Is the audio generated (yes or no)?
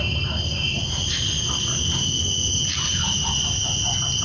no